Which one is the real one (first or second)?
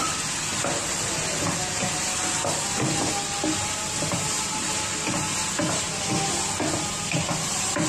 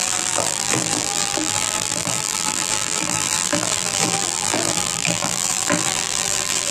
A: first